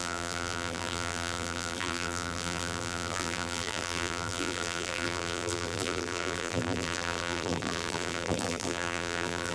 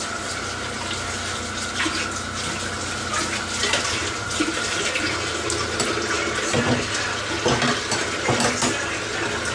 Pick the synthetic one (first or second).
first